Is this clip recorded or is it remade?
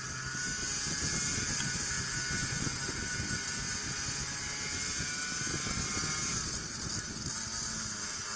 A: recorded